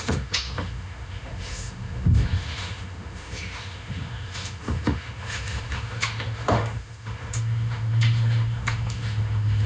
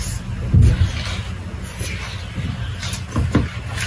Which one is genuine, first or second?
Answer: second